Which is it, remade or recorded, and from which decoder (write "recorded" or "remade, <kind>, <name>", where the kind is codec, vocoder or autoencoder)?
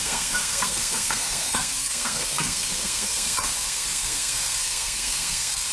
remade, codec, SNAC